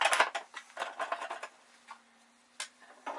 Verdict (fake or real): real